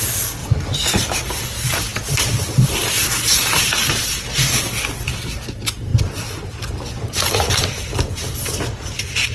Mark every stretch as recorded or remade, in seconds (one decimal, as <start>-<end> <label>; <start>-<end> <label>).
0.0-0.4 recorded; 0.4-0.9 remade; 0.9-9.3 recorded